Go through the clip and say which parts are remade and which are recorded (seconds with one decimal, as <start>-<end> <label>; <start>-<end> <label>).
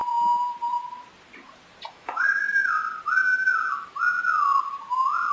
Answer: 0.0-1.9 recorded; 1.9-2.4 remade; 2.4-5.3 recorded